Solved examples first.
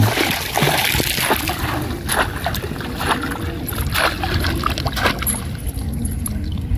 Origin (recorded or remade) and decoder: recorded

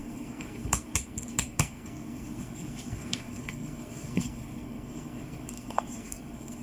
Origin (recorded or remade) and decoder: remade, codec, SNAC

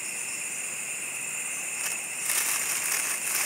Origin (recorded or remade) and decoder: recorded